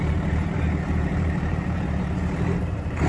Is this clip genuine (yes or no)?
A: no